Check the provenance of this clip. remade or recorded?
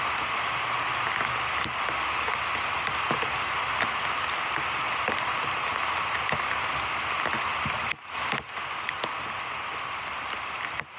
recorded